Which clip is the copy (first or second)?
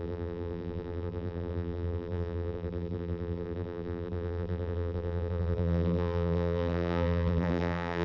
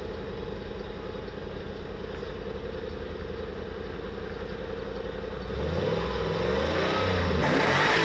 first